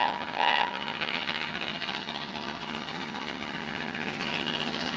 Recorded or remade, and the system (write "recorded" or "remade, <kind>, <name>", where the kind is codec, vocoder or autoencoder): remade, vocoder, HiFi-GAN